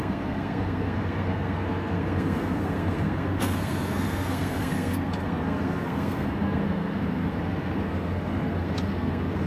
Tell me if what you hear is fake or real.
fake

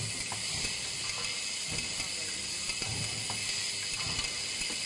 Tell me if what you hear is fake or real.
real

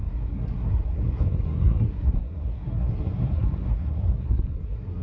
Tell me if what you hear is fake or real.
fake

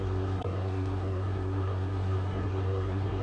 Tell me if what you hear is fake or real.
fake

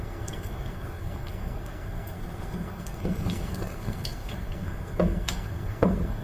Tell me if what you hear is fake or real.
fake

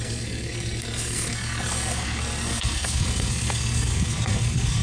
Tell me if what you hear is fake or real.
fake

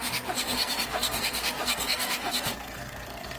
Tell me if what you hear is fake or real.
fake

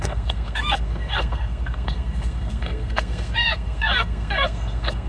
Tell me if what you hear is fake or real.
fake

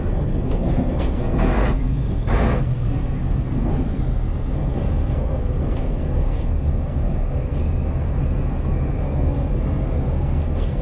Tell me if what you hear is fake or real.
fake